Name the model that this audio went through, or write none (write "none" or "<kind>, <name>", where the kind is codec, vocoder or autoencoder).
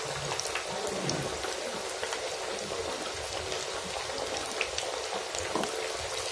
none